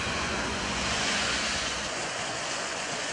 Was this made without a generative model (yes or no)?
no